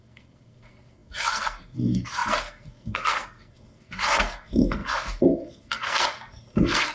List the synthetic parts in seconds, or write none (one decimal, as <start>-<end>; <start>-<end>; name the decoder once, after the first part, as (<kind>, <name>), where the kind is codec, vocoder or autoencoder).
0.0-6.9 (codec, SNAC)